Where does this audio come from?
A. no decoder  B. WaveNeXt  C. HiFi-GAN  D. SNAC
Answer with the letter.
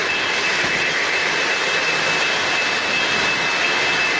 A